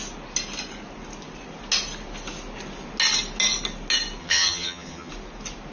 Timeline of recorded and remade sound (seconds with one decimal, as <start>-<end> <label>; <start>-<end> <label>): 0.0-4.2 recorded; 4.2-5.1 remade; 5.1-5.7 recorded

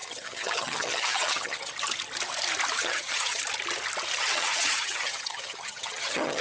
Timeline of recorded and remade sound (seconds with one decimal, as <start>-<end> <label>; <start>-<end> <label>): 0.0-1.7 remade; 1.7-2.8 recorded; 2.8-3.4 remade; 3.4-4.2 recorded; 4.2-6.4 remade

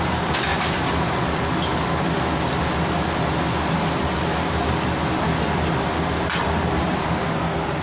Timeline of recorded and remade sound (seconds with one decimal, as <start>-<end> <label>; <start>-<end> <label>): 0.0-7.8 recorded